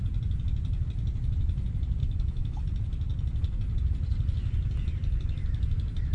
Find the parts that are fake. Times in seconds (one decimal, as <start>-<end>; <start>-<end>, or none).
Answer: 2.0-2.6